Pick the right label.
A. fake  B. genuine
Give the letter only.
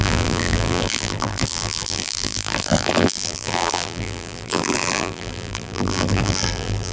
A